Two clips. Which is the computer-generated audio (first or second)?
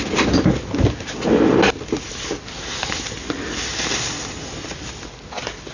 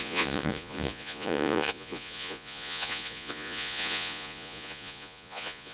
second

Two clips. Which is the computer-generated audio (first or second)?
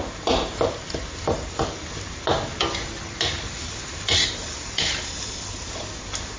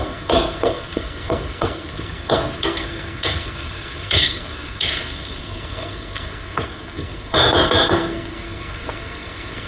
second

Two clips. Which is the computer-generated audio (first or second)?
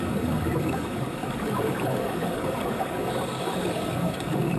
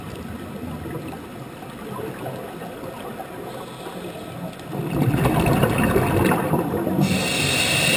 first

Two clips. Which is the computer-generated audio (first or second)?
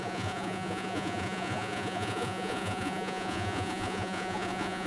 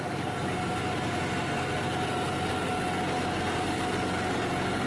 first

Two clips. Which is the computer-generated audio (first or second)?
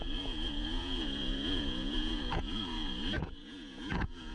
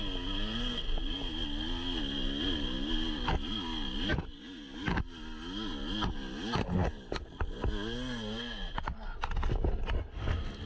first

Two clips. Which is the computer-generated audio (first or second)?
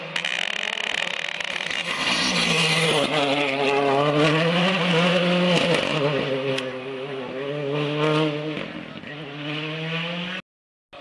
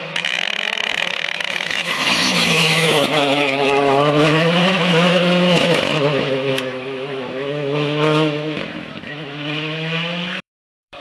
second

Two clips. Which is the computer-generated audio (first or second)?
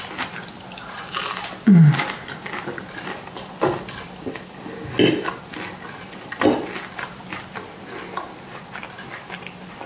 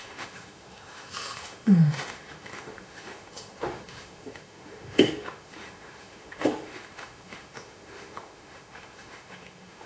second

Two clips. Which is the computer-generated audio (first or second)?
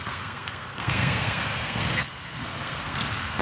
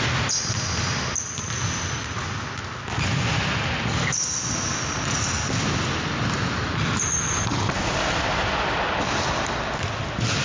first